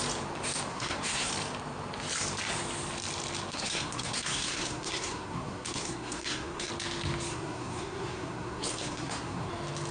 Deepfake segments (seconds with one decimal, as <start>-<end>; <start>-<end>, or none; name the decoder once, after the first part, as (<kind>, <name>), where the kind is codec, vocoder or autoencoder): 0.7-1.3 (codec, SNAC); 3.5-6.7; 7.3-9.5